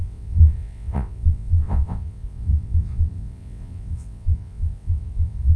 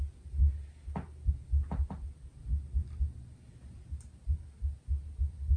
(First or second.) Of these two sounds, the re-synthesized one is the first